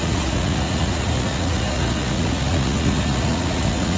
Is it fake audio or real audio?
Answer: fake